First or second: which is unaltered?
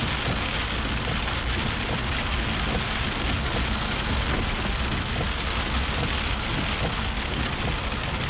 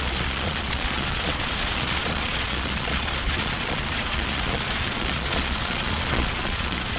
first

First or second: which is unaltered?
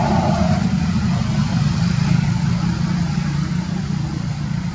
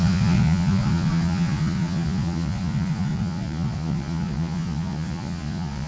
first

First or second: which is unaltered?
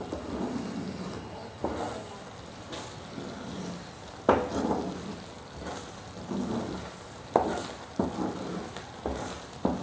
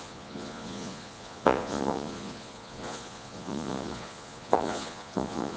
first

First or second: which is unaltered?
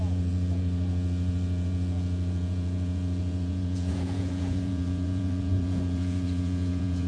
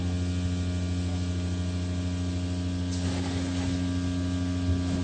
second